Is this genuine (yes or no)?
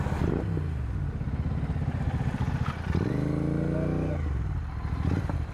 yes